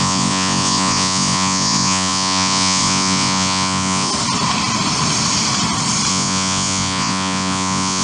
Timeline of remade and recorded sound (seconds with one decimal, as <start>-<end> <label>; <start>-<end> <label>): 0.0-4.1 remade; 4.1-6.1 recorded; 6.1-8.0 remade